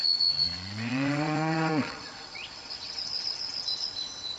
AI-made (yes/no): yes